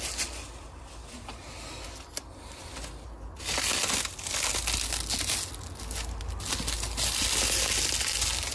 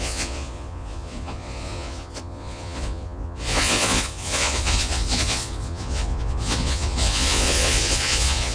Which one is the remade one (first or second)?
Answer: second